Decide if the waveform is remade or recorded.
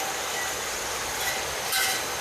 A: recorded